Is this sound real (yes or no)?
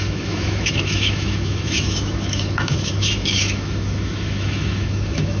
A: no